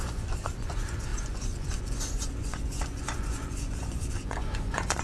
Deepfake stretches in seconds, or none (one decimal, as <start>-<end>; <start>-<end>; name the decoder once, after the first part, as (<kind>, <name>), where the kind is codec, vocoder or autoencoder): 0.0-5.0 (vocoder, Vocos)